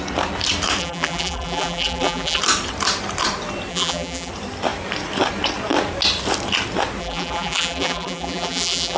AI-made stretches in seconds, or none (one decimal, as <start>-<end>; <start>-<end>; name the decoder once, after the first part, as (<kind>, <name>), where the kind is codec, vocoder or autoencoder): 0.8-2.4 (vocoder, BigVGAN v2); 3.7-4.3; 7.0-9.0